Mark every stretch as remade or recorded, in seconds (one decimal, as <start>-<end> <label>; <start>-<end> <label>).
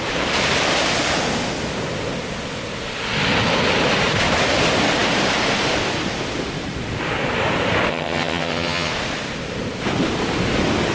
0.0-7.9 recorded; 7.9-8.9 remade; 8.9-10.9 recorded